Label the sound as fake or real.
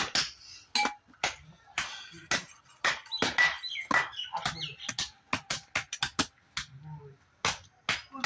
real